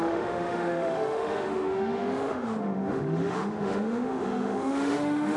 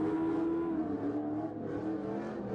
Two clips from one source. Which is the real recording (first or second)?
second